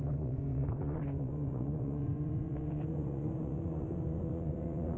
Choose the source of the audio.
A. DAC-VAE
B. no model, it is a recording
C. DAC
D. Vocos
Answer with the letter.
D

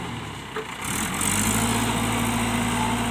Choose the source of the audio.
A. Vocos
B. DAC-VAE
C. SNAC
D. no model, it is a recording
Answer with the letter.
D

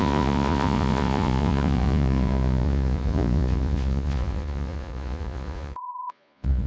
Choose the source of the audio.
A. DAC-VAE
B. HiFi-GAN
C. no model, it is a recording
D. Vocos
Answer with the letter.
D